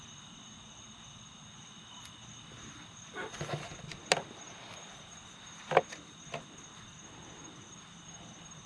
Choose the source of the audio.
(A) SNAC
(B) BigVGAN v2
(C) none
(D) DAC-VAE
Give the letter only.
C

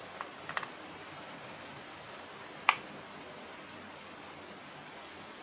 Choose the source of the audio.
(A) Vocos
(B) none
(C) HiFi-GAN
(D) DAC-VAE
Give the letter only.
B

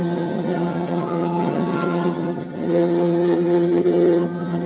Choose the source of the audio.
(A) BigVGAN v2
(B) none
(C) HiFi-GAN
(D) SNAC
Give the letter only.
C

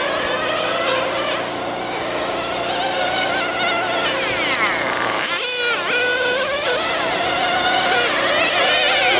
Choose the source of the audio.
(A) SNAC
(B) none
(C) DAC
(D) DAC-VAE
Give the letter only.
B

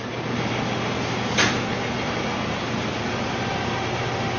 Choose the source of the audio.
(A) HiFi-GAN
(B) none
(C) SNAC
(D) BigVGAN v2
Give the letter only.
B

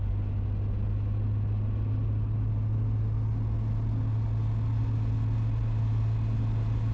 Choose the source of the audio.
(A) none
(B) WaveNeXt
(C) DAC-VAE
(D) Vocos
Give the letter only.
A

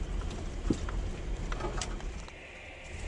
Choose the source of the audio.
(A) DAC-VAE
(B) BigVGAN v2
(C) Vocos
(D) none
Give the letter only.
B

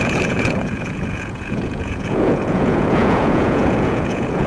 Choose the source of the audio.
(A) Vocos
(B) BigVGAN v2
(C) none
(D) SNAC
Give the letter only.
A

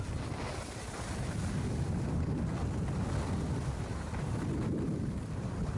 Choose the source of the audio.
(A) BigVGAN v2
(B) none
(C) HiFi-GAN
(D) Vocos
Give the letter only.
B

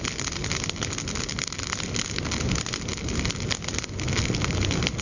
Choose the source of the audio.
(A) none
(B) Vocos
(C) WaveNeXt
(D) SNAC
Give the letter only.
A